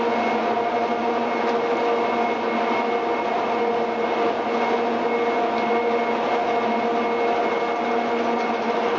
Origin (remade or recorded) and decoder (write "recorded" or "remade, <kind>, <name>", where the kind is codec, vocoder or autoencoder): recorded